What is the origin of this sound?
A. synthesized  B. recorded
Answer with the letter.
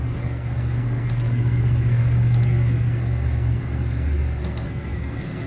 A